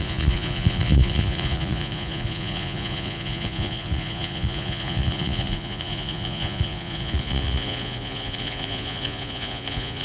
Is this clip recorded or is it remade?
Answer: remade